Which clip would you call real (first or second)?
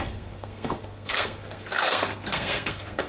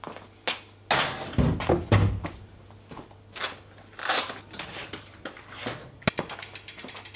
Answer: second